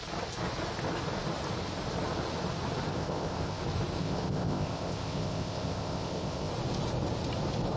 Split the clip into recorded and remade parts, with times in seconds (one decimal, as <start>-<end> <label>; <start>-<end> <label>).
0.0-2.9 recorded; 2.9-3.6 remade; 3.6-4.0 recorded; 4.0-6.5 remade; 6.5-7.8 recorded